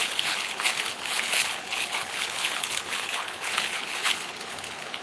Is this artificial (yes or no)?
yes